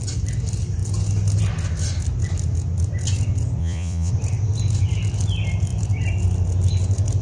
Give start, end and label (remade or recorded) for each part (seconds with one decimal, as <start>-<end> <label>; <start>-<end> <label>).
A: 0.0-3.6 recorded; 3.6-4.1 remade; 4.1-7.2 recorded